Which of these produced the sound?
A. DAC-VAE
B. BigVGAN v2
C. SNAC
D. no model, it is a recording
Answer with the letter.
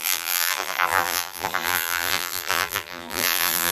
B